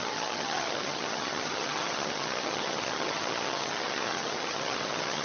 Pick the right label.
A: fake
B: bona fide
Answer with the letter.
A